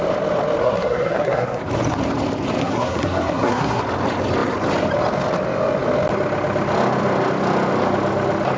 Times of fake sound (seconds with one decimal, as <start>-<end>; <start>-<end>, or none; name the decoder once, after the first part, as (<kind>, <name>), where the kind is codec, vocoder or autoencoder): 0.6-1.6 (codec, SNAC); 2.6-3.8